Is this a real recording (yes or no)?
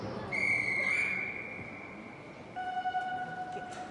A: yes